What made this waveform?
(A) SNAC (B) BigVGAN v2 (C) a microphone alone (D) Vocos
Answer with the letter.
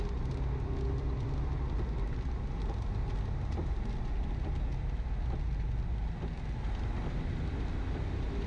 C